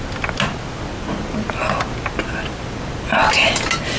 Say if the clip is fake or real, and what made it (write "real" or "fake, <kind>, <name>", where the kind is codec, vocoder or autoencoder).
real